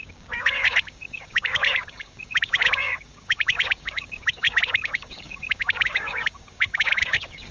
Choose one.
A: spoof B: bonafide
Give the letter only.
A